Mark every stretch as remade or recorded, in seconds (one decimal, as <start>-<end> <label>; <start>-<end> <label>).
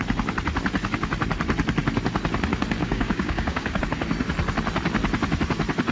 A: 0.0-2.8 recorded; 2.8-3.8 remade; 3.8-5.9 recorded